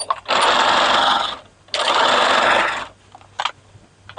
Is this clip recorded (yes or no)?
yes